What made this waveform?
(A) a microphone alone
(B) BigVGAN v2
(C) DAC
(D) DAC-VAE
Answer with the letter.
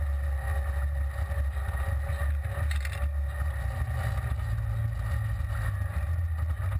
A